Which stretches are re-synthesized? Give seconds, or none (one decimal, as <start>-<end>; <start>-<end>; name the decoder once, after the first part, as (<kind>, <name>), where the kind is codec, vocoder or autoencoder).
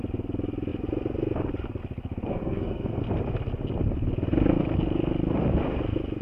2.3-3.0 (codec, SNAC)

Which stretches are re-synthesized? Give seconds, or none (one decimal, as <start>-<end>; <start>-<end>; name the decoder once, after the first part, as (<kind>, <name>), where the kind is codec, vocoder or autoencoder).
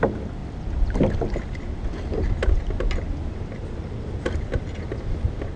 none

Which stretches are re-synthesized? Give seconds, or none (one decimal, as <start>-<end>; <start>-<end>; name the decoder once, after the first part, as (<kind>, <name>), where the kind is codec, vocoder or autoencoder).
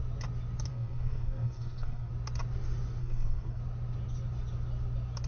0.7-2.1 (codec, SNAC); 3.0-3.6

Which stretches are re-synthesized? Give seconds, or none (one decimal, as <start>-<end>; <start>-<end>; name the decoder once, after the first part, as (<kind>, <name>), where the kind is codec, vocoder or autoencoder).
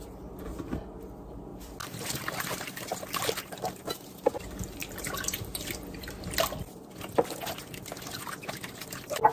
none